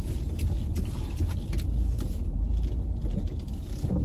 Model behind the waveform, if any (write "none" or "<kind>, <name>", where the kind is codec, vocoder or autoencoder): none